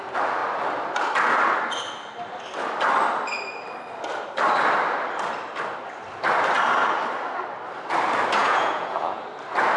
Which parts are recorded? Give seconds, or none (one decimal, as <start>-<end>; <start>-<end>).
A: 0.0-8.4; 9.2-9.8